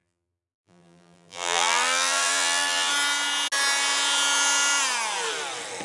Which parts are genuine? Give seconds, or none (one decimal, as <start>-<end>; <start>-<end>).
2.9-5.8